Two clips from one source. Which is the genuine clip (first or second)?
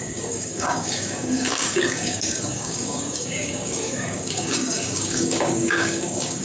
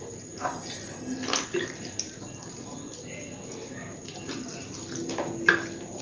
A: second